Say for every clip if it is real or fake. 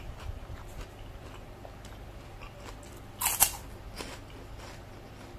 real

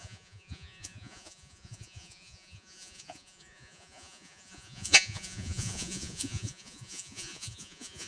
fake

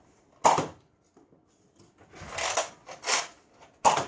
real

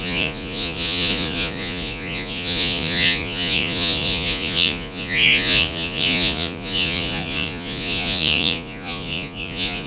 fake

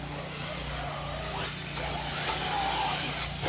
real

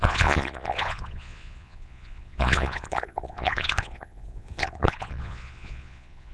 fake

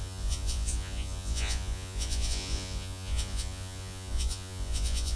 fake